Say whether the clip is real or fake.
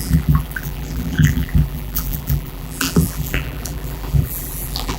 fake